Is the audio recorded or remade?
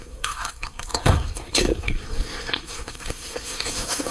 remade